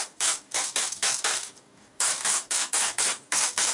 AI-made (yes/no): yes